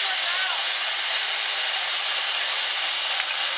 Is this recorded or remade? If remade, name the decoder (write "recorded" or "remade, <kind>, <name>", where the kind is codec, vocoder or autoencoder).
recorded